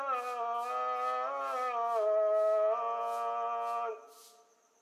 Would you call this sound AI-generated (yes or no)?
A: no